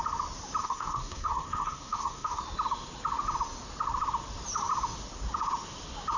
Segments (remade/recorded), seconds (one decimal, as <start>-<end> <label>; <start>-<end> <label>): 0.0-0.6 recorded; 0.6-2.4 remade; 2.4-6.2 recorded